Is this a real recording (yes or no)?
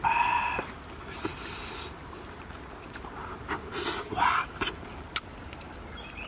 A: yes